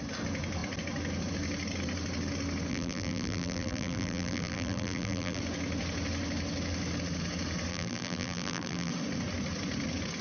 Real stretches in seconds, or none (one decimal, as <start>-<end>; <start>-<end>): 0.0-2.7; 5.4-7.7; 8.9-10.2